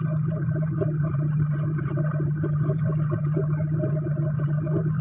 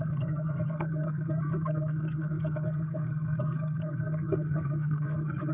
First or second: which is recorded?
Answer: first